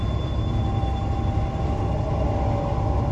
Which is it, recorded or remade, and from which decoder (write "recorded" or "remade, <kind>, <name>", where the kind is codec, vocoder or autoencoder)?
recorded